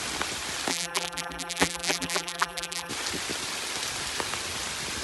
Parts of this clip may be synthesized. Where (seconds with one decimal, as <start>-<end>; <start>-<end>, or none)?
0.7-2.9